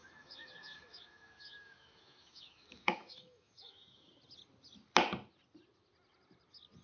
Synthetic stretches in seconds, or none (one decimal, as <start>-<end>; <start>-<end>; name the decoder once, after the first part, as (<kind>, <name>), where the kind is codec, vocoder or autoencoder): 0.0-4.1 (autoencoder, DAC-VAE)